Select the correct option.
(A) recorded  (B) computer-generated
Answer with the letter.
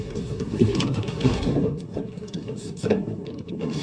B